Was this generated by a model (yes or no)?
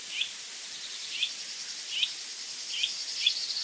no